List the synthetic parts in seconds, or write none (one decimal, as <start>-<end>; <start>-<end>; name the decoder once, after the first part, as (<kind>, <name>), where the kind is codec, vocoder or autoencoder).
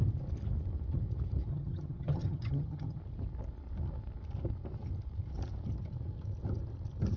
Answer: 1.5-3.0 (vocoder, HiFi-GAN)